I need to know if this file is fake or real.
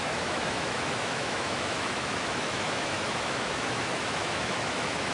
fake